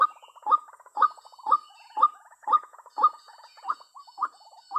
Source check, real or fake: fake